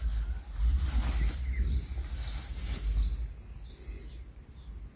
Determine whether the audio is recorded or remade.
recorded